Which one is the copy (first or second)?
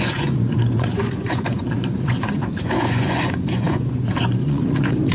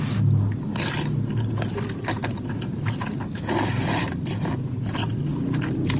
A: first